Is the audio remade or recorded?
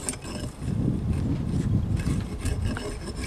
recorded